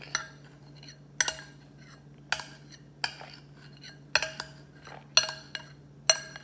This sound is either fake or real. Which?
real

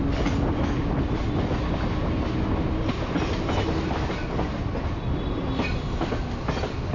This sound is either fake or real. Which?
real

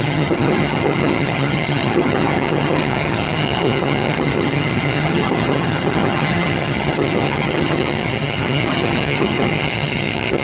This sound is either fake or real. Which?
fake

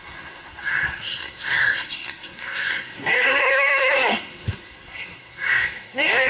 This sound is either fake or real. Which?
fake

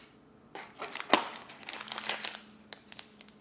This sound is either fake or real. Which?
real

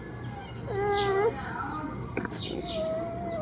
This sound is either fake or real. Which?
real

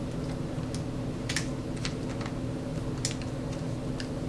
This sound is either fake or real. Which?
real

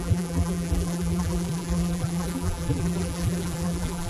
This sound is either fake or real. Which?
fake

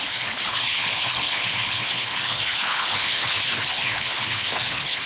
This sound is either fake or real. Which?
fake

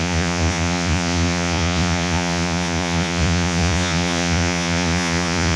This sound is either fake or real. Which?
fake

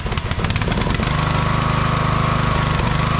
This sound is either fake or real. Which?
real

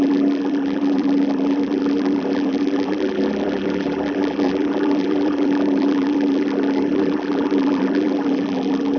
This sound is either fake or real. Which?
fake